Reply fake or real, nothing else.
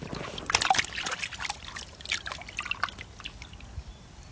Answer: real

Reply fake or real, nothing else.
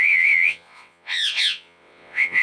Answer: fake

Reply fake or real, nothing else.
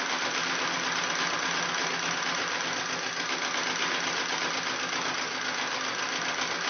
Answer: real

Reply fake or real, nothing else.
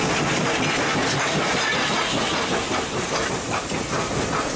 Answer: real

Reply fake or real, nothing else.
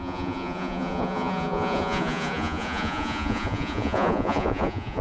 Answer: fake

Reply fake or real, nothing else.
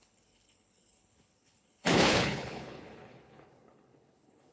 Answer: fake